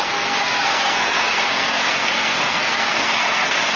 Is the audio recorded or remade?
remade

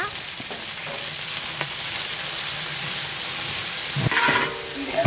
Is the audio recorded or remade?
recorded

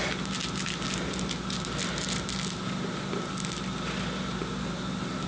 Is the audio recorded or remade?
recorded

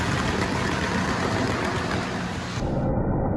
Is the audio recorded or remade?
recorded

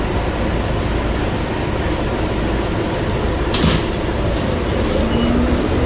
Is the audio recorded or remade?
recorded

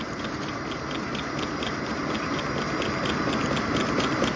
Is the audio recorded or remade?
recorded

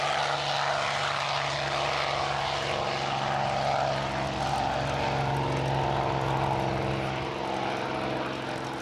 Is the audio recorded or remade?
recorded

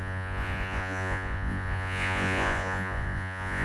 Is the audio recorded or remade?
remade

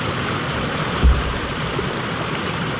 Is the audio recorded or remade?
recorded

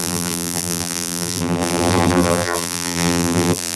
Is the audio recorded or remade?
remade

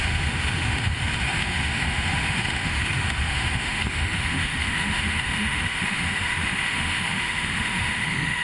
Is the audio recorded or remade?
remade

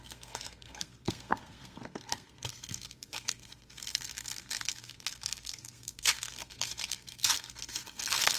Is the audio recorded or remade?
remade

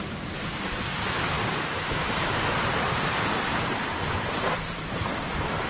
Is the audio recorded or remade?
remade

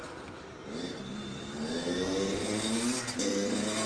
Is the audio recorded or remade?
recorded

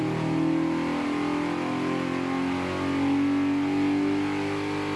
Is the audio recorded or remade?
recorded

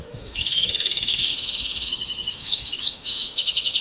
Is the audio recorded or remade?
remade